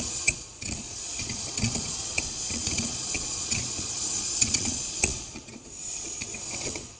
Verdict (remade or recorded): remade